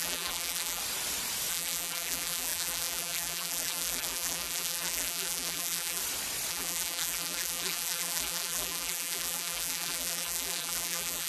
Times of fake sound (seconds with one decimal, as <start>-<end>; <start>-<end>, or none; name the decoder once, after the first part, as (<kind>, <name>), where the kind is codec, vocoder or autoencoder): 0.0-0.8 (vocoder, BigVGAN v2); 1.5-6.0; 6.5-11.3